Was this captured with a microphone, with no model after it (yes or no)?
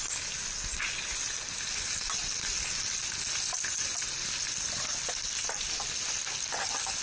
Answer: yes